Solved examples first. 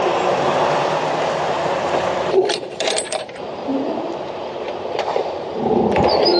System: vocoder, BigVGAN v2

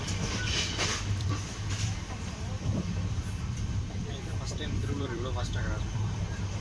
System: vocoder, BigVGAN v2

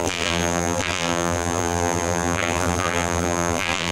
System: vocoder, BigVGAN v2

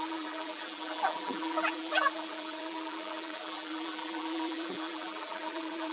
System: vocoder, BigVGAN v2